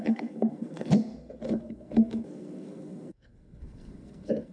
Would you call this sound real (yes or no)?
no